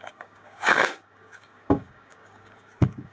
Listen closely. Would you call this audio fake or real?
fake